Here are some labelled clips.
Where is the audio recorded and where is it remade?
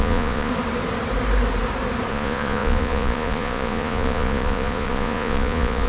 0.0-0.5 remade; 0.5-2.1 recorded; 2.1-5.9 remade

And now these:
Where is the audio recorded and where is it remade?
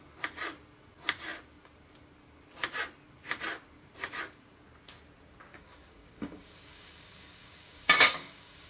0.0-5.5 recorded; 5.5-8.7 remade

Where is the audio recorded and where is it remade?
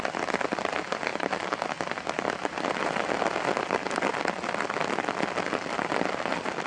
0.0-6.7 recorded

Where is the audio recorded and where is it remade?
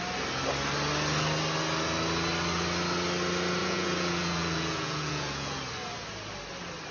0.0-3.6 recorded; 3.6-5.6 remade; 5.6-6.9 recorded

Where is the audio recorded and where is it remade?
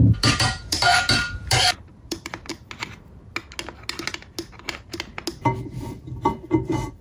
0.0-2.5 remade; 2.5-7.0 recorded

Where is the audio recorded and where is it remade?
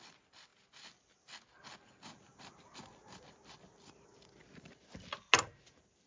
0.0-6.1 recorded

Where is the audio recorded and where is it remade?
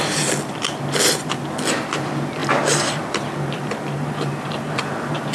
0.0-5.3 remade